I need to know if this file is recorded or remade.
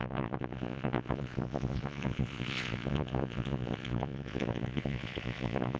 remade